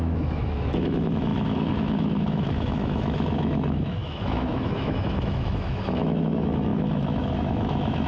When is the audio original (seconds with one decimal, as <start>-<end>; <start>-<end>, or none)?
none